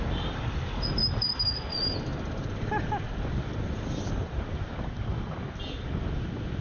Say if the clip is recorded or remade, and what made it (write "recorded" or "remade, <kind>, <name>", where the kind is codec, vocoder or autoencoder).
recorded